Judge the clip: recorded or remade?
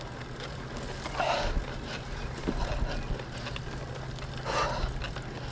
recorded